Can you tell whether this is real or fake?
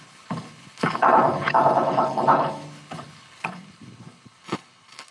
fake